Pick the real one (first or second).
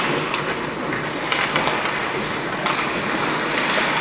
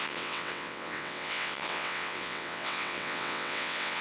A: first